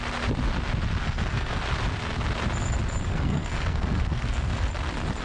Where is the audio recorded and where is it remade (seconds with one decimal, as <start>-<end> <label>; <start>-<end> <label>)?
0.0-1.0 recorded; 1.0-1.6 remade; 1.6-3.1 recorded; 3.1-4.6 remade; 4.6-5.2 recorded